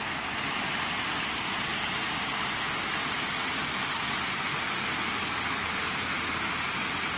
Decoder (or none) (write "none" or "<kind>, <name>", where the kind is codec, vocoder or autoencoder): none